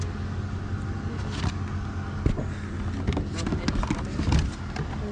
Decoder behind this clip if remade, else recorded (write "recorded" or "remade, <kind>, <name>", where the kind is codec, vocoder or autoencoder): recorded